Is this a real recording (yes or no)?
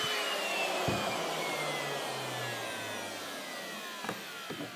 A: yes